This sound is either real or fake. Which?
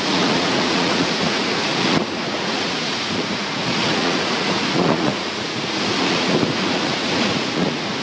fake